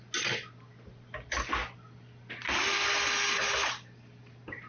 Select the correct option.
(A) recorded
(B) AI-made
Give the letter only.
A